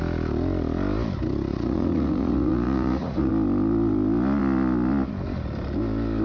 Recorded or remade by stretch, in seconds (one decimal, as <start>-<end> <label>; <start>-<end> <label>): 0.0-1.5 recorded; 1.5-3.3 remade; 3.3-6.2 recorded